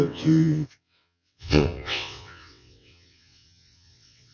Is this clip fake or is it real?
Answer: fake